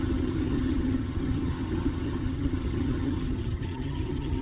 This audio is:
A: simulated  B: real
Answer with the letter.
A